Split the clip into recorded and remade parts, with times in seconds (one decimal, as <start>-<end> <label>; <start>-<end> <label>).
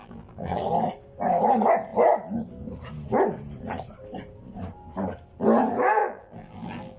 0.0-0.6 remade; 0.6-6.0 recorded; 6.0-7.0 remade